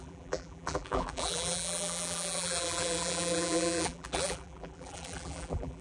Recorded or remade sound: remade